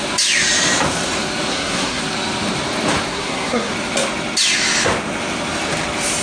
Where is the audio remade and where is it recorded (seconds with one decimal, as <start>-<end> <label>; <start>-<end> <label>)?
0.0-1.5 recorded; 1.5-2.0 remade; 2.0-3.1 recorded; 3.1-3.7 remade; 3.7-6.2 recorded